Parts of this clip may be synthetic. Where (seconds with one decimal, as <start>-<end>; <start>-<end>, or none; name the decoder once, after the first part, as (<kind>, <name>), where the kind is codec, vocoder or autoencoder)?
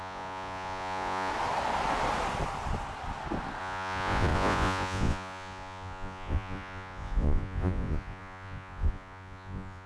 0.0-1.3 (vocoder, Vocos); 3.6-9.9